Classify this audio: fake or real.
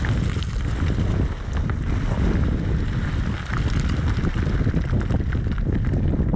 real